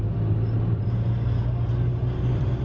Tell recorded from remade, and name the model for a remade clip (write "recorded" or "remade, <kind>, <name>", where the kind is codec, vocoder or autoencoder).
recorded